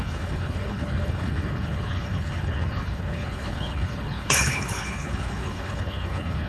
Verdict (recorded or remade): remade